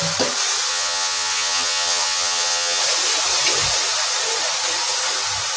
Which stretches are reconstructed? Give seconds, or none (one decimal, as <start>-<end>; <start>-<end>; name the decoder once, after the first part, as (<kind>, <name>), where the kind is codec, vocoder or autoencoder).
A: 0.7-2.8 (vocoder, HiFi-GAN)